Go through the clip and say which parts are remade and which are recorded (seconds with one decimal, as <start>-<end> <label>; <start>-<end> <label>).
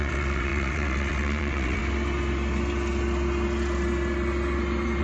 0.0-1.8 remade; 1.8-5.0 recorded